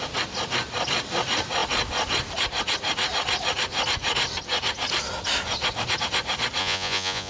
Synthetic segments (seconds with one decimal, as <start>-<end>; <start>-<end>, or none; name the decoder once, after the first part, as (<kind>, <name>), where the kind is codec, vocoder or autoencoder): 6.6-7.3 (vocoder, Vocos)